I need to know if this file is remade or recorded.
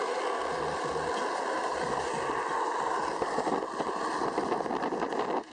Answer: recorded